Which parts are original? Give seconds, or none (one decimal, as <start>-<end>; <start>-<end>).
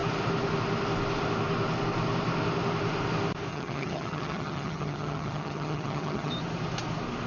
0.0-3.5; 6.3-7.3